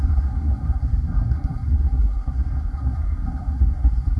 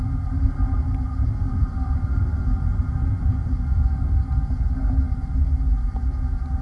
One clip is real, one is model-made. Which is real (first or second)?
second